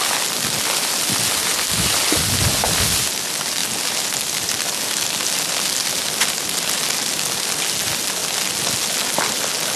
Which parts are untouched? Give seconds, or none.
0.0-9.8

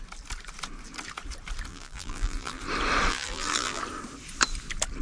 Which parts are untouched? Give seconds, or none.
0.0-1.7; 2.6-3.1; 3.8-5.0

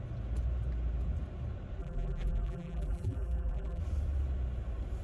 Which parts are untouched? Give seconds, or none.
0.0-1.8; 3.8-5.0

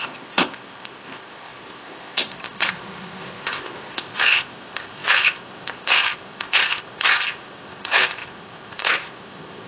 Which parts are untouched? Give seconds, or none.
none

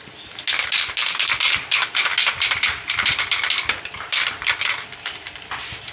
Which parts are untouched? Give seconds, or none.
0.0-2.1

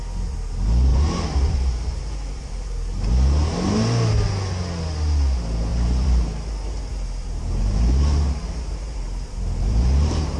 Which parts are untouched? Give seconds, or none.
0.0-0.9; 3.1-5.7